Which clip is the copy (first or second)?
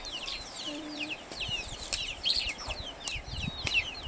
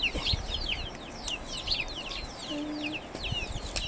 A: first